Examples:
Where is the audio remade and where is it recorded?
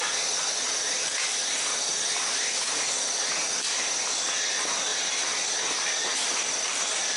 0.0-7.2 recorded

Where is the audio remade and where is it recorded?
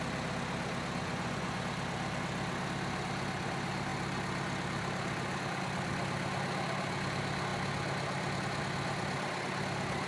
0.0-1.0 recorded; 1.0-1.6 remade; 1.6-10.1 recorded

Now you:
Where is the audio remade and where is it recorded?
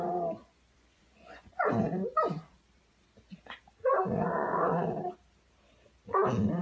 0.0-0.4 recorded; 0.4-1.7 remade; 1.7-3.9 recorded; 3.9-4.9 remade; 4.9-6.6 recorded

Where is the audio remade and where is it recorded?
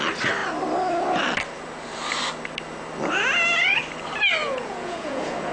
0.0-4.4 recorded; 4.4-5.5 remade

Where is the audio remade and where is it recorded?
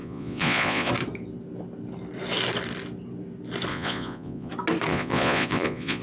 0.0-0.9 remade; 0.9-3.7 recorded; 3.7-4.5 remade; 4.5-4.9 recorded; 4.9-6.0 remade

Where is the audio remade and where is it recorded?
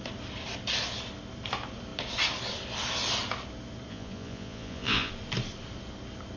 0.0-3.9 recorded; 3.9-5.1 remade; 5.1-6.4 recorded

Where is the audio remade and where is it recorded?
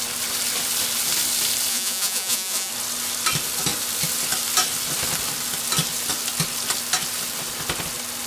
0.0-1.7 recorded; 1.7-2.7 remade; 2.7-8.3 recorded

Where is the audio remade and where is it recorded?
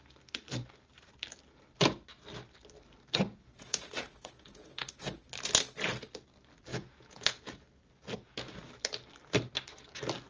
0.0-3.3 recorded; 3.3-5.1 remade; 5.1-6.7 recorded; 6.7-7.5 remade; 7.5-10.3 recorded